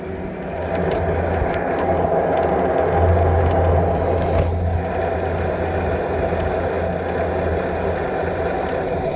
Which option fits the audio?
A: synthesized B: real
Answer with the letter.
B